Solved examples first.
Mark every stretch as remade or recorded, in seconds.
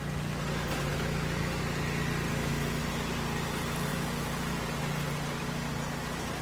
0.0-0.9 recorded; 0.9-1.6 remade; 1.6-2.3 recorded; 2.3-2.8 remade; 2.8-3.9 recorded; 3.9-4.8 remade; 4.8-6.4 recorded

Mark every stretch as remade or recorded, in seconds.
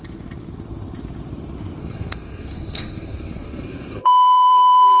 0.0-1.8 recorded; 1.8-5.0 remade